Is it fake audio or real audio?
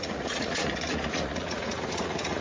fake